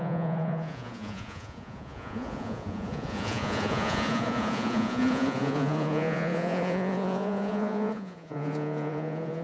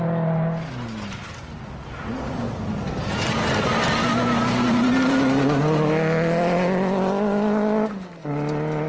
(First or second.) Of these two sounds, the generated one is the first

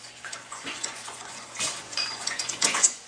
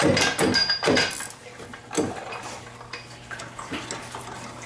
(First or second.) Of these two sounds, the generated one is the first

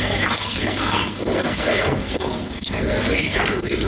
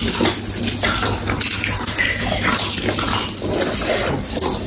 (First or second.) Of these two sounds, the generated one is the first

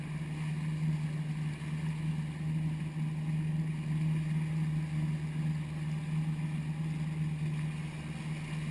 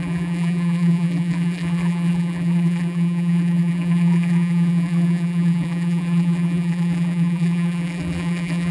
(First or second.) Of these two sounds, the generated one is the second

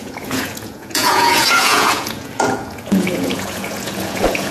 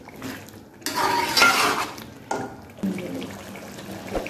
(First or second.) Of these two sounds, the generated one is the first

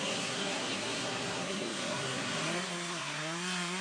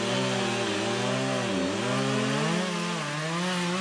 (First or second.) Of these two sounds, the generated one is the first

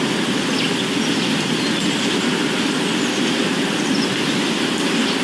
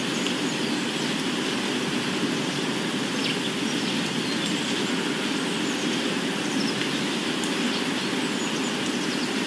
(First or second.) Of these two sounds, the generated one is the first